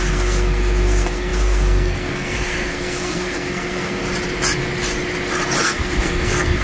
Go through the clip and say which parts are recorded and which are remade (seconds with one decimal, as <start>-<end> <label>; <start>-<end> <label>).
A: 0.0-4.0 remade; 4.0-5.6 recorded; 5.6-6.6 remade

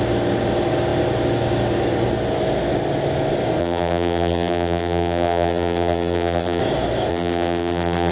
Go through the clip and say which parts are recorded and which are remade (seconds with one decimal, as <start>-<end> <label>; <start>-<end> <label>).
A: 0.0-3.6 recorded; 3.6-6.6 remade; 6.6-7.1 recorded; 7.1-8.1 remade

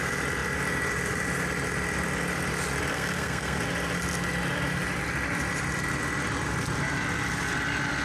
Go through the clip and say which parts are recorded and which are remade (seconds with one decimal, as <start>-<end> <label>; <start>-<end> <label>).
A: 0.0-2.9 recorded; 2.9-3.6 remade; 3.6-8.0 recorded

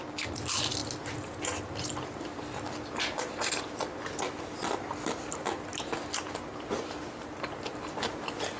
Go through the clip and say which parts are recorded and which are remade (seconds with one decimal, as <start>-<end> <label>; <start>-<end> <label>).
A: 0.0-8.6 recorded

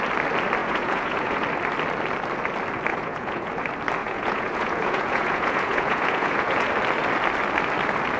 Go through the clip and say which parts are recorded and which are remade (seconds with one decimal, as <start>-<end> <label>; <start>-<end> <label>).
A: 0.0-0.6 recorded; 0.6-1.4 remade; 1.4-2.9 recorded; 2.9-3.5 remade; 3.5-4.0 recorded; 4.0-6.7 remade; 6.7-8.2 recorded

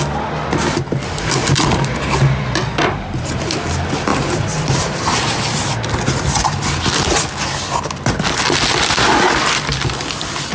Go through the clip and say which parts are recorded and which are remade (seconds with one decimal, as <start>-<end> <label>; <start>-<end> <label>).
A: 0.0-1.4 recorded; 1.4-2.1 remade; 2.1-4.1 recorded; 4.1-5.7 remade; 5.7-10.5 recorded

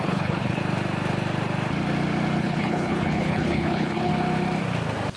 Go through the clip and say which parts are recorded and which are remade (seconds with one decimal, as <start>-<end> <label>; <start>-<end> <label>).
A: 0.0-0.6 remade; 0.6-2.4 recorded; 2.4-4.1 remade; 4.1-5.2 recorded

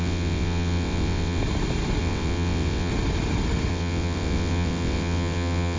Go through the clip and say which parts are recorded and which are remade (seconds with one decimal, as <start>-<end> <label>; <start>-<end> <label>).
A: 0.0-1.4 remade; 1.4-2.0 recorded; 2.0-2.9 remade; 2.9-3.7 recorded; 3.7-5.8 remade